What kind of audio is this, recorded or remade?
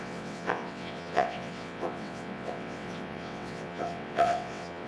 remade